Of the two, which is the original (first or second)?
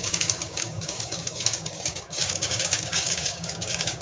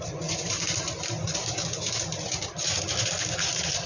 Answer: second